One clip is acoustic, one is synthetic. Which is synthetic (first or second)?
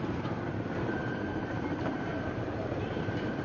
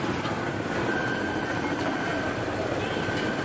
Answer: first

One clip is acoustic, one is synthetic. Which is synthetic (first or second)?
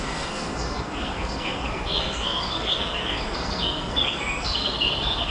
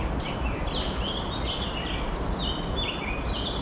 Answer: first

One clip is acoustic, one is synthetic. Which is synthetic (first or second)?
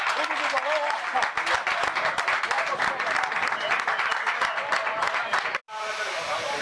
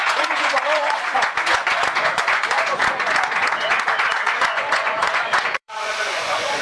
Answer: second